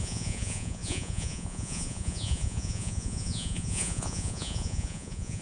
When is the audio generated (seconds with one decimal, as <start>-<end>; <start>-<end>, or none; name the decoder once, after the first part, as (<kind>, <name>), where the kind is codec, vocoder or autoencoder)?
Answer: 0.0-5.4 (vocoder, Vocos)